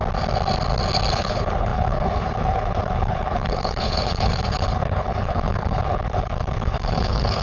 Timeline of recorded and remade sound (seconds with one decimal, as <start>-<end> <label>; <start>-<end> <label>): 0.0-1.1 recorded; 1.1-7.4 remade

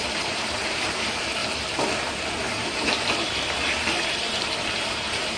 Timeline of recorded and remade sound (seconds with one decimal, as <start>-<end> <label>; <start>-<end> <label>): 0.0-1.4 remade; 1.4-2.1 recorded; 2.1-5.4 remade

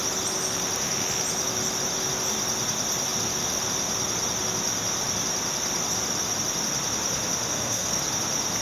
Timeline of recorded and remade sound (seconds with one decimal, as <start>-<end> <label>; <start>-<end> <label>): 0.0-7.5 recorded; 7.5-8.0 remade; 8.0-8.6 recorded

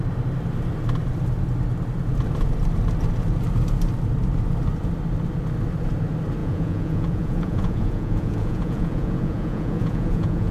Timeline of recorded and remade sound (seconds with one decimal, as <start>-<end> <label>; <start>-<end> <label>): 0.0-6.4 recorded; 6.4-10.5 remade

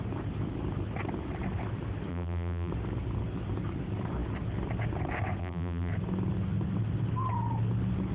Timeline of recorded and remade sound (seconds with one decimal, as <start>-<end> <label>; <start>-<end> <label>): 0.0-2.1 recorded; 2.1-2.7 remade; 2.7-5.4 recorded; 5.4-5.9 remade; 5.9-8.1 recorded

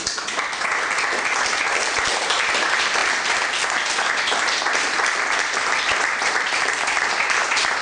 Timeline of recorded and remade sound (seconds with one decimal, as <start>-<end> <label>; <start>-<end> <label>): 0.0-3.0 recorded; 3.0-7.8 remade